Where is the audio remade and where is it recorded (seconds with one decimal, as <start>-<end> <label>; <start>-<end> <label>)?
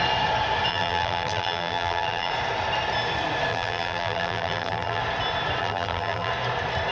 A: 0.0-0.7 recorded; 0.7-2.3 remade; 2.3-3.5 recorded; 3.5-5.0 remade; 5.0-5.6 recorded; 5.6-6.3 remade; 6.3-6.9 recorded